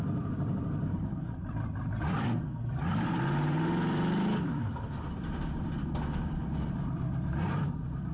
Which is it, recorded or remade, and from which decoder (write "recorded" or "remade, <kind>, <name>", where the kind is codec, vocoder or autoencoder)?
remade, vocoder, BigVGAN v2